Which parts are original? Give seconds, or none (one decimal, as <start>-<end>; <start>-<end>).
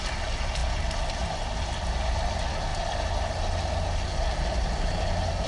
0.0-5.5